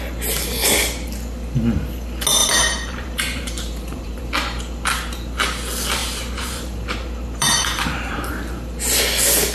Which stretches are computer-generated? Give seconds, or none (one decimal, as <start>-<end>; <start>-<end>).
2.4-4.2; 6.0-8.3